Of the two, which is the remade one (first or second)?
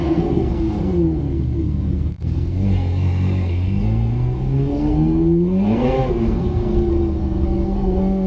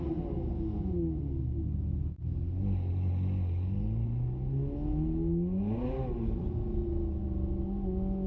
first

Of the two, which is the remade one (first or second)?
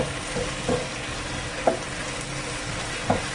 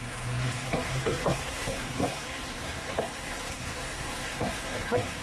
second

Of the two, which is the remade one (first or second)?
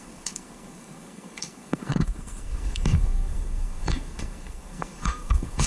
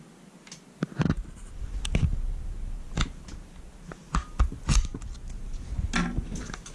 first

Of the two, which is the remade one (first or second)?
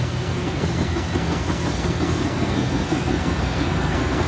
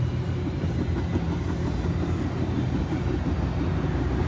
first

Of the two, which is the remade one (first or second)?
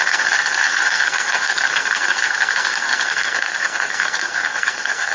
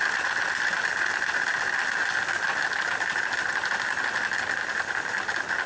first